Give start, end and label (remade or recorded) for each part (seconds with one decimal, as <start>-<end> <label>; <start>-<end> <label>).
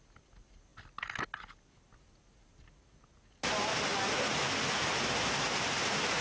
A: 0.0-6.2 recorded